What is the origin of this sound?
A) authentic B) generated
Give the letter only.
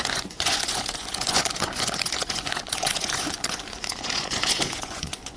B